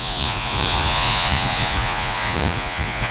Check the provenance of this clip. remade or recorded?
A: remade